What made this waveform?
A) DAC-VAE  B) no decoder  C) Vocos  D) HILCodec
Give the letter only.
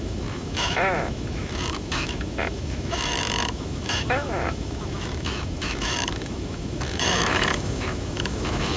A